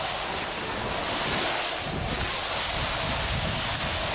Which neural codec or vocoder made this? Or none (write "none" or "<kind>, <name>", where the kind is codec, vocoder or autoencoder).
none